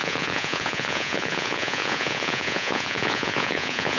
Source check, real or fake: fake